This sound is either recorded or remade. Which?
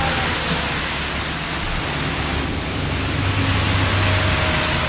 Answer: recorded